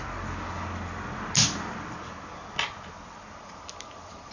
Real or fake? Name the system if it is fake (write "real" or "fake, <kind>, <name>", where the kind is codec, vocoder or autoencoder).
real